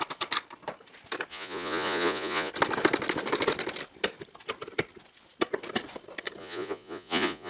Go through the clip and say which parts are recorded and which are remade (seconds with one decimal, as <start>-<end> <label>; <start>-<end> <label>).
0.0-1.3 recorded; 1.3-2.5 remade; 2.5-6.4 recorded; 6.4-7.5 remade

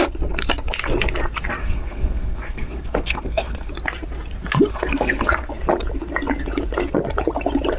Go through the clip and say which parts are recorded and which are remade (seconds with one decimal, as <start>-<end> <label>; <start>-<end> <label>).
0.0-1.6 recorded; 1.6-3.7 remade; 3.7-4.7 recorded; 4.7-5.5 remade; 5.5-7.8 recorded

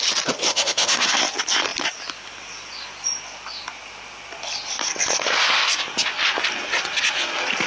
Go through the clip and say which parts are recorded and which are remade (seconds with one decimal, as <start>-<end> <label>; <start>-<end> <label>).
0.0-0.5 recorded; 0.5-1.2 remade; 1.2-7.7 recorded